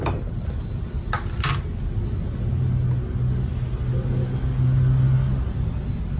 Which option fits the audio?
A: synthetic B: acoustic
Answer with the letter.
B